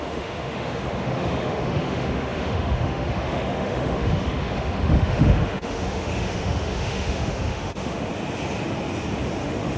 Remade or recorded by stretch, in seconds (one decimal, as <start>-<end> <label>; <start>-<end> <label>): 0.0-8.1 remade; 8.1-9.4 recorded; 9.4-9.8 remade